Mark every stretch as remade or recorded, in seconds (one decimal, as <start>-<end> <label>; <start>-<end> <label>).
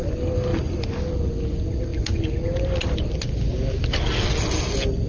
0.0-5.1 recorded